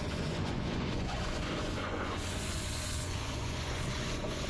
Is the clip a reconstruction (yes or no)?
yes